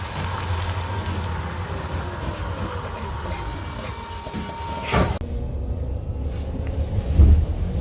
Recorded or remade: recorded